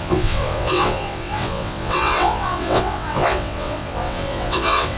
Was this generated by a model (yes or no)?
yes